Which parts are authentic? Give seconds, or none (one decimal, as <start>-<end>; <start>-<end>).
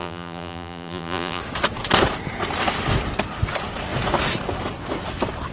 1.4-5.5